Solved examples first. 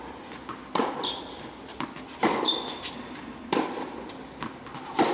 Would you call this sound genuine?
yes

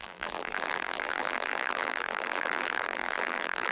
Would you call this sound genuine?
no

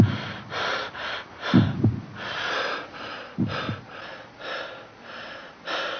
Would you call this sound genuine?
no